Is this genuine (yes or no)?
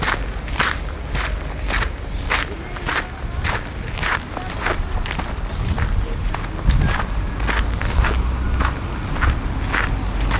yes